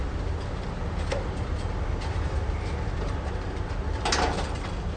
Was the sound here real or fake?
real